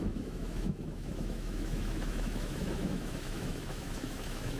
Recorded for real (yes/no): no